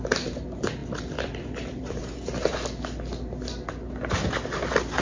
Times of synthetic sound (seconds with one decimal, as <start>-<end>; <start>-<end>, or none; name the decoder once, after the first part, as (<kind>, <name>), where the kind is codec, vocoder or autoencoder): 0.8-2.0 (vocoder, BigVGAN v2)